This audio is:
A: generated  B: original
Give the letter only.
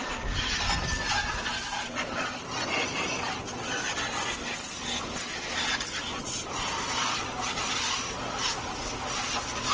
B